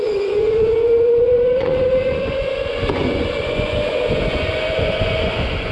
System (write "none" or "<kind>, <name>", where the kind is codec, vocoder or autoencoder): vocoder, Vocos